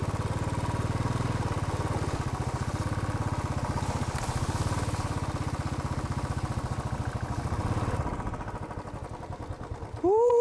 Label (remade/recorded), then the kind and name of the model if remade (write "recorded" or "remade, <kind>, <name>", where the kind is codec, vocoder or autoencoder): recorded